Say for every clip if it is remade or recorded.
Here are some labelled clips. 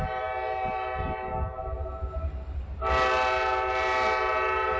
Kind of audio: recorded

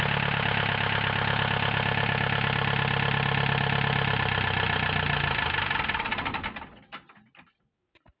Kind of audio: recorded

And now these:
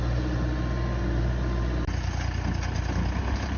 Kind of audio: recorded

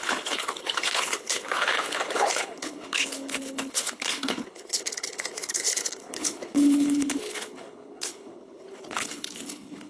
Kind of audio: remade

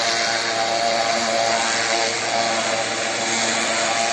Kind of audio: recorded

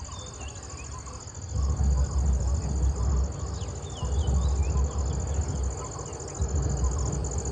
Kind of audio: recorded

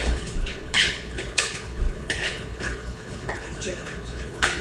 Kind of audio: remade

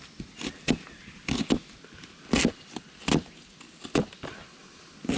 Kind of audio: recorded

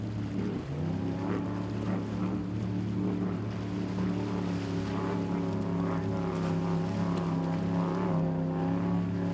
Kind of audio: recorded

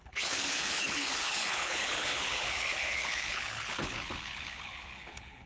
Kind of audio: remade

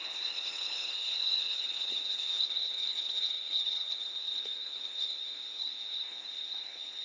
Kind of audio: remade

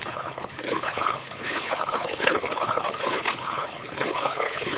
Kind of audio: remade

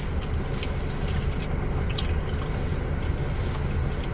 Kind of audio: recorded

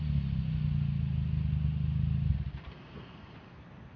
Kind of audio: recorded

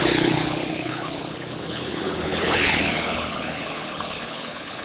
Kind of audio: remade